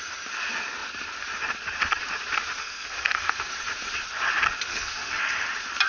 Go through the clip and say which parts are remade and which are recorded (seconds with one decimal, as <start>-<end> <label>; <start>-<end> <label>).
0.0-2.6 recorded; 2.6-3.5 remade; 3.5-4.7 recorded; 4.7-5.2 remade; 5.2-5.9 recorded